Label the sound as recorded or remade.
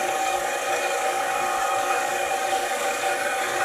remade